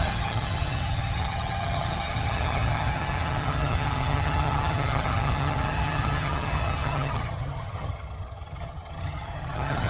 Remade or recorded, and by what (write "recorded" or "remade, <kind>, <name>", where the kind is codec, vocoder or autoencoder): remade, vocoder, HiFi-GAN